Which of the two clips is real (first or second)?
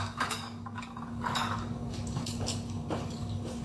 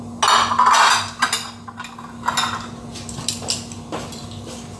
second